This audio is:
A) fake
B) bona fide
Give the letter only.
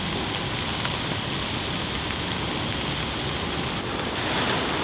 B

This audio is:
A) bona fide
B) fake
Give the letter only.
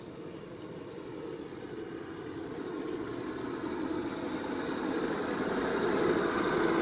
A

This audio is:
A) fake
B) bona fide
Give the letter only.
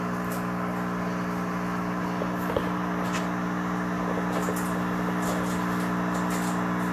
B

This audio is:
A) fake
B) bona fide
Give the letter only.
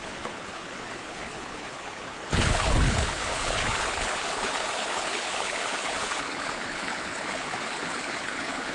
A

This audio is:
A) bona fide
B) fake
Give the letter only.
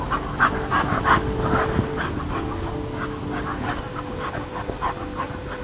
A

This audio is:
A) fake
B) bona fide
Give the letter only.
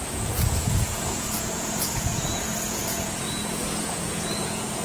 A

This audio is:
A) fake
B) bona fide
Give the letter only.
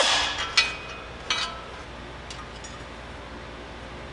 B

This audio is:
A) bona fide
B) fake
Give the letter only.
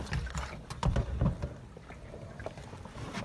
A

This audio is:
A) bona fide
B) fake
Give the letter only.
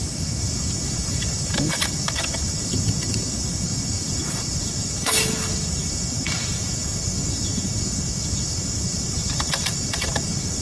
B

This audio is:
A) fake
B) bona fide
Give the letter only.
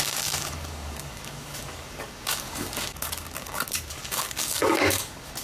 A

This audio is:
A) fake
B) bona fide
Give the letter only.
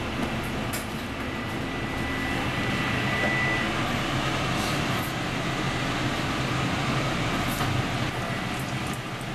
B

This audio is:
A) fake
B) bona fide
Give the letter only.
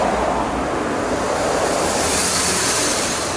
A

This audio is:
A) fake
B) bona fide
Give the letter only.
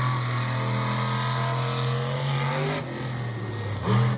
B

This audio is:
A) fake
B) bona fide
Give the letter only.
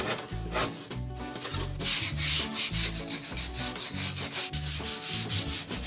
B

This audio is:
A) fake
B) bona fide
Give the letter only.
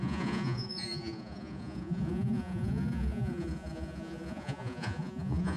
A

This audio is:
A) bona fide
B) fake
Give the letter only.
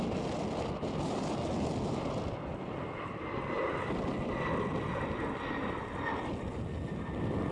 A